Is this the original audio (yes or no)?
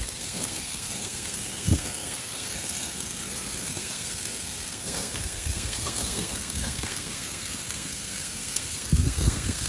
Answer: no